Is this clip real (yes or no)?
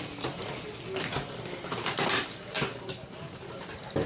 yes